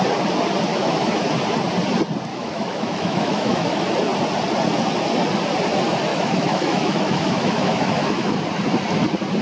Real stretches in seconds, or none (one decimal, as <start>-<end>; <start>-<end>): 0.0-0.7; 1.3-2.3; 3.8-6.1; 8.4-9.4